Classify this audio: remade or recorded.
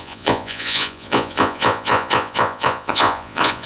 remade